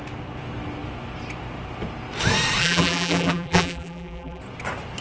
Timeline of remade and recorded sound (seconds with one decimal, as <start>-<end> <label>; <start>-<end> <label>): 0.0-2.6 recorded; 2.6-4.4 remade; 4.4-5.0 recorded